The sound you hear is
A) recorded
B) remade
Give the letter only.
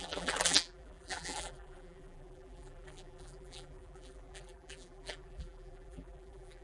B